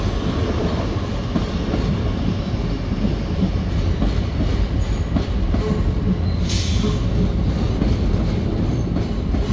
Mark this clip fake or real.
real